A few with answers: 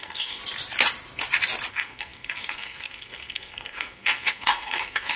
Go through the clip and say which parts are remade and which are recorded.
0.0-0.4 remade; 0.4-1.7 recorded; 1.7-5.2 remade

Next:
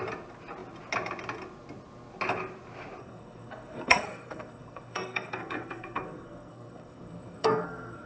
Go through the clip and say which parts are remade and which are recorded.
0.0-3.0 recorded; 3.0-8.1 remade

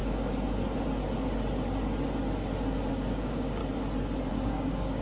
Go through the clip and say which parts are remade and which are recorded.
0.0-2.9 recorded; 2.9-3.6 remade; 3.6-4.3 recorded; 4.3-5.0 remade

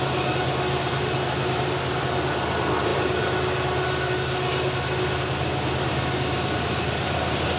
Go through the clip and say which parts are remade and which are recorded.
0.0-7.6 recorded

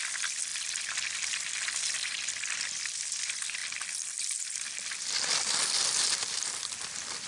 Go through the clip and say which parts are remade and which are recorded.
0.0-3.6 remade; 3.6-4.2 recorded; 4.2-7.3 remade

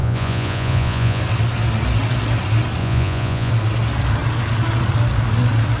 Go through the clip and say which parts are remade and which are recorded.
0.0-1.2 remade; 1.2-2.8 recorded; 2.8-3.5 remade; 3.5-5.8 recorded